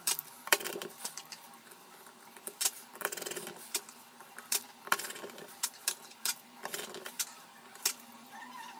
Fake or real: fake